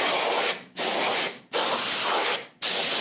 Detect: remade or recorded recorded